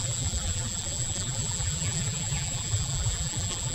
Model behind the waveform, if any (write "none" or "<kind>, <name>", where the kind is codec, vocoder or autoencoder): vocoder, BigVGAN v2